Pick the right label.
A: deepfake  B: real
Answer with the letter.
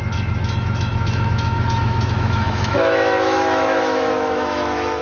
A